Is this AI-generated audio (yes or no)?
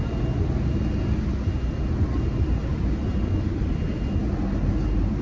no